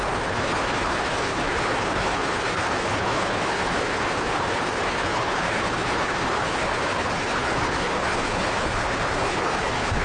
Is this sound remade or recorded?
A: remade